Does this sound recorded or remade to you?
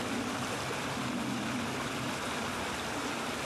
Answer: recorded